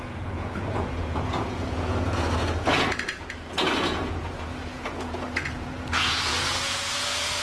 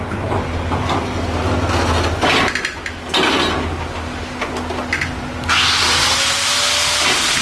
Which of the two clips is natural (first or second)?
second